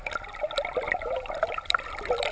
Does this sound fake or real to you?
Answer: real